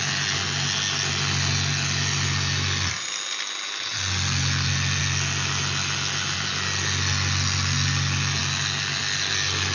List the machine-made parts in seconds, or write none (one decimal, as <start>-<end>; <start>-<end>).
none